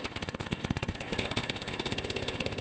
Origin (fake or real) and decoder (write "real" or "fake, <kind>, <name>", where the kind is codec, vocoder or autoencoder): fake, codec, ZipCodec